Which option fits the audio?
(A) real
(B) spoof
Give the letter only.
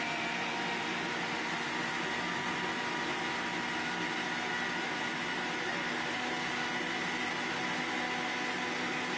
A